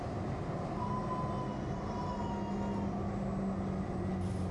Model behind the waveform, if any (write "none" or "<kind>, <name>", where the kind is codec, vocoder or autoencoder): none